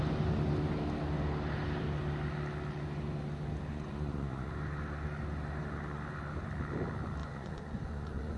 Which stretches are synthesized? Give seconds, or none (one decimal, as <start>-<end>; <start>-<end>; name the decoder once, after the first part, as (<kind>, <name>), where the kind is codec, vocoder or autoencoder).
3.7-4.5 (vocoder, Vocos); 7.2-8.4